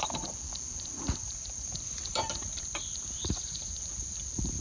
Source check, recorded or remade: remade